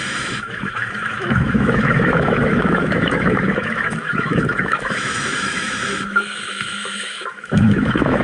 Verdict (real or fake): fake